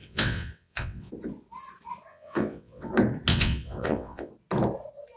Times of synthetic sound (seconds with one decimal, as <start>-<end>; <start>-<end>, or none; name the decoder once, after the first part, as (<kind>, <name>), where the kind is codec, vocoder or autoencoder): 0.0-1.1 (vocoder, WaveNeXt); 2.1-2.9; 3.3-4.3